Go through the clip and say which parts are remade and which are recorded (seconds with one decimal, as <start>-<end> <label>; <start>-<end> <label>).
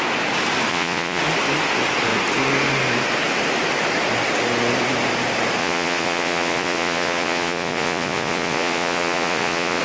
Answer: 0.0-0.7 recorded; 0.7-1.2 remade; 1.2-5.6 recorded; 5.6-9.8 remade